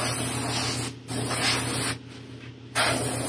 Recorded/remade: recorded